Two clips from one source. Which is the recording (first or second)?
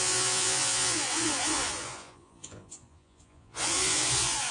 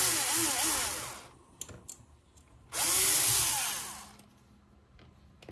second